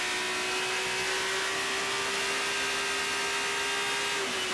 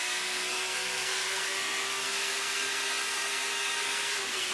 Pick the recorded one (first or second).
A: first